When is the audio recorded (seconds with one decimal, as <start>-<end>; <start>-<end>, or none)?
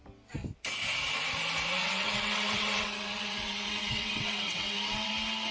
0.0-1.8; 5.1-5.5